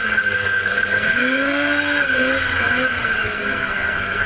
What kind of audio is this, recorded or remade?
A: remade